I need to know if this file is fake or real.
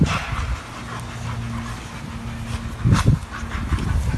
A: real